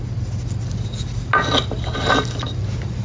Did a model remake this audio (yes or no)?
no